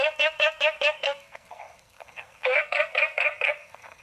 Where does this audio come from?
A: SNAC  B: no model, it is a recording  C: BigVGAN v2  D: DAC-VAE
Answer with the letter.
A